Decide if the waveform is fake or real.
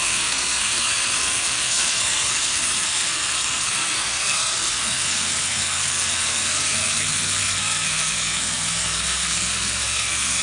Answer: fake